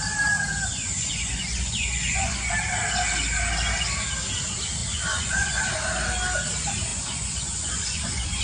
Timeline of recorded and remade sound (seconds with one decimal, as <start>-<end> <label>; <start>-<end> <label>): 0.0-0.7 recorded; 0.7-2.5 remade; 2.5-4.8 recorded; 4.8-5.6 remade; 5.6-6.9 recorded; 6.9-8.4 remade